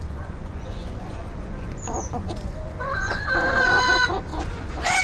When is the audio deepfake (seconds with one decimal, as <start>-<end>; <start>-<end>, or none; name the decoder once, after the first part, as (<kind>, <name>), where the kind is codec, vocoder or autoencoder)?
0.0-5.0 (vocoder, Vocos)